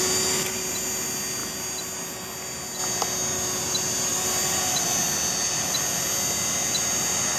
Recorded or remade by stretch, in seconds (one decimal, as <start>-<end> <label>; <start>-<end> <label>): 0.0-7.4 recorded